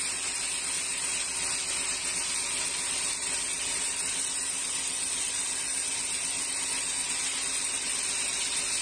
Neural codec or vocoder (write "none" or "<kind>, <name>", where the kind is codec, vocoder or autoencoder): none